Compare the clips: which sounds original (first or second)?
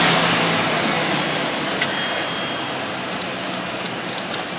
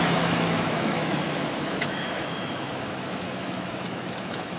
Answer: first